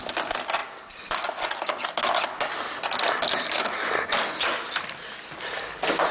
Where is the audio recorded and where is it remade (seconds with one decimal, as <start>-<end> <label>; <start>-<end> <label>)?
0.0-6.1 recorded